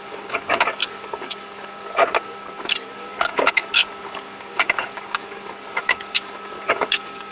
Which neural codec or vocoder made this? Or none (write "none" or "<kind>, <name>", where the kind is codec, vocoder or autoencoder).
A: codec, DAC